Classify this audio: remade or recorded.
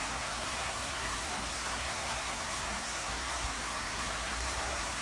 remade